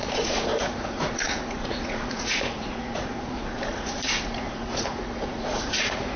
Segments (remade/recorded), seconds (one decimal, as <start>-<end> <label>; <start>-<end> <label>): 0.0-6.2 remade